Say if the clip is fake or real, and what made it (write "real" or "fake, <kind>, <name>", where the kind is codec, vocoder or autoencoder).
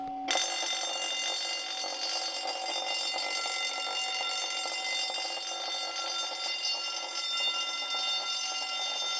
real